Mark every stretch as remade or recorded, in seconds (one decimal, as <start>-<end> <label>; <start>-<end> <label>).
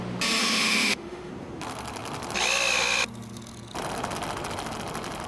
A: 0.0-0.4 recorded; 0.4-1.3 remade; 1.3-5.3 recorded